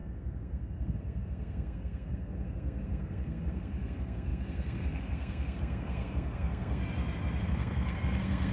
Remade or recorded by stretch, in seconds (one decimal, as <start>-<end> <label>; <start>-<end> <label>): 0.0-6.8 remade; 6.8-7.4 recorded; 7.4-8.5 remade